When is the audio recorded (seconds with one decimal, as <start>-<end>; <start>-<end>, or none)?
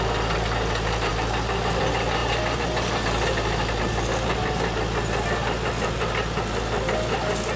0.0-7.6